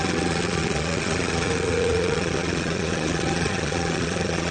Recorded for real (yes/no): no